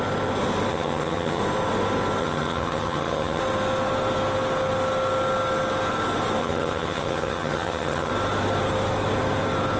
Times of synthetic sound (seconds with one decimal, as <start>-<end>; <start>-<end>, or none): 0.7-1.4; 2.2-3.4; 6.4-8.1